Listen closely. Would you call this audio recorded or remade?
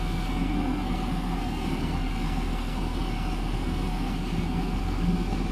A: remade